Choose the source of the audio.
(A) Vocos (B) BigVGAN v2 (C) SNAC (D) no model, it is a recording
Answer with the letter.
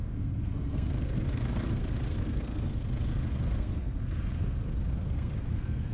C